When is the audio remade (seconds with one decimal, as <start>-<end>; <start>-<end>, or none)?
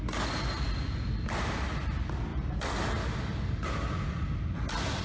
none